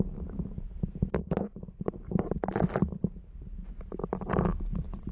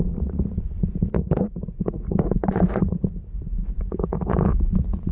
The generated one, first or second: second